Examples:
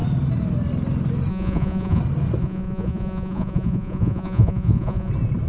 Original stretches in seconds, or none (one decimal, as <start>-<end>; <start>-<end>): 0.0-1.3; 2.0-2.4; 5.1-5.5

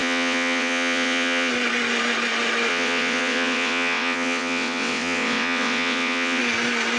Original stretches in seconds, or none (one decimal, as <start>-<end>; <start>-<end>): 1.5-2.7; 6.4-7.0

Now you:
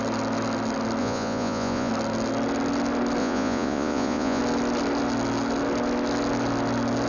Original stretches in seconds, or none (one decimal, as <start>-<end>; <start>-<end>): 0.0-1.0; 1.9-3.2; 4.4-7.1

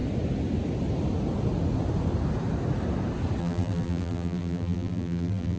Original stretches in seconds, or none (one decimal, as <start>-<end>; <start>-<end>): 0.0-3.4

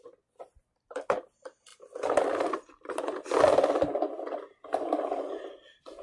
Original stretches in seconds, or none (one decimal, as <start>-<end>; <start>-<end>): 0.0-6.0

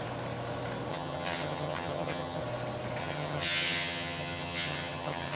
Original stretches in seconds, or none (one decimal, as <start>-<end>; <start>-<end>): 0.0-0.9; 2.4-3.0

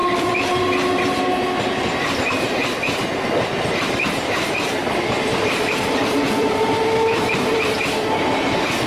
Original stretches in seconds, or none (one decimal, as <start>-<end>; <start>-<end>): 0.0-3.8

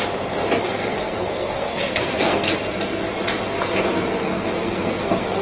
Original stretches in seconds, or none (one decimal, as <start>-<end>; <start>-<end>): 0.0-0.6; 2.5-4.1